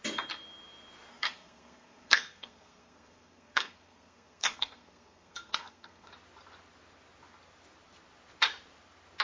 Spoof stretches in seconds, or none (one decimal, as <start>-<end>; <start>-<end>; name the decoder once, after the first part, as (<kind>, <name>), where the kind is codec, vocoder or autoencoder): 1.1-6.1 (codec, SNAC)